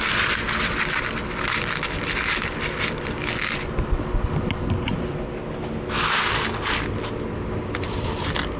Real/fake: real